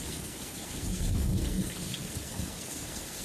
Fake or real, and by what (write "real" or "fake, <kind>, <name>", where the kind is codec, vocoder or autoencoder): fake, codec, SNAC